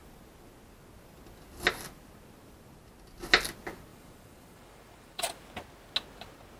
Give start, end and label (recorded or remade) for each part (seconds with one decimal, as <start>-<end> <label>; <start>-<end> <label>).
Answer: 0.0-3.9 recorded; 3.9-5.4 remade; 5.4-6.6 recorded